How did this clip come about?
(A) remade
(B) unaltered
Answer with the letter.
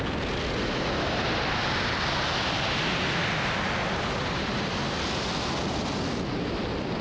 B